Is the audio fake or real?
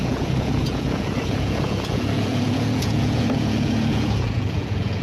fake